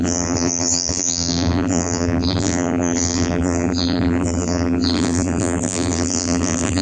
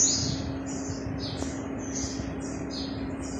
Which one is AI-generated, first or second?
first